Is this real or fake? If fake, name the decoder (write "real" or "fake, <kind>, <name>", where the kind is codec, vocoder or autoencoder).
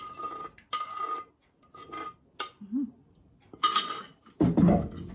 real